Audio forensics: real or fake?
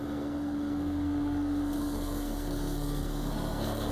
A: fake